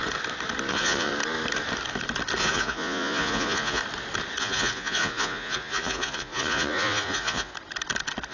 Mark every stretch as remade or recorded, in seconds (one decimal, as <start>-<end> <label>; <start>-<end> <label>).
0.0-0.7 recorded; 0.7-1.1 remade; 1.1-2.4 recorded; 2.4-3.8 remade; 3.8-4.4 recorded; 4.4-7.5 remade; 7.5-8.3 recorded